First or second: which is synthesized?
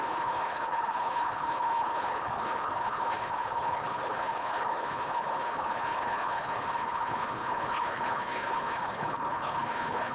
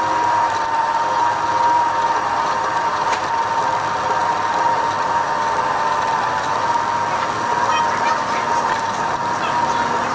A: first